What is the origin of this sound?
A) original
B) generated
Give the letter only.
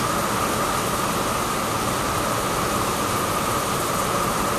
A